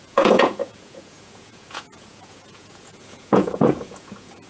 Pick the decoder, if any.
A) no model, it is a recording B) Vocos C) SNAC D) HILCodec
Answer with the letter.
B